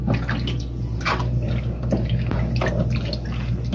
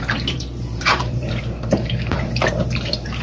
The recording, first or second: first